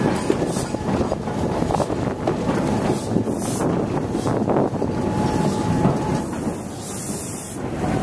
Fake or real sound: real